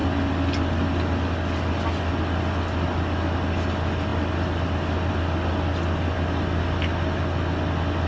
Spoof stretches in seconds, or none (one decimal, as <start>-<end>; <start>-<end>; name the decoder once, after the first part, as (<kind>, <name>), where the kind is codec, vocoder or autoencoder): none